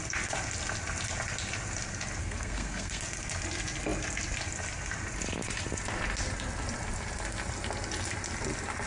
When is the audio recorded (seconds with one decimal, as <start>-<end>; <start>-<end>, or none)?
0.0-2.2; 3.0-8.9